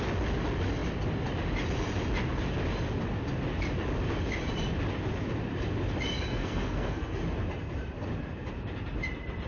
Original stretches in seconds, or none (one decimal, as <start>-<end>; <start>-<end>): 0.0-6.3; 7.2-9.5